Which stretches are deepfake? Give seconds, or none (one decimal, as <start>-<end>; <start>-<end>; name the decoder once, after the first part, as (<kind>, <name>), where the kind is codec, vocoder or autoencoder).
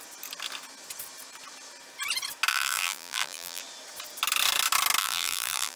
2.5-3.6 (vocoder, BigVGAN v2); 5.0-5.8